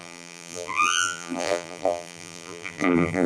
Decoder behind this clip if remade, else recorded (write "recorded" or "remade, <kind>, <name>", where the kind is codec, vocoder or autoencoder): remade, vocoder, BigVGAN v2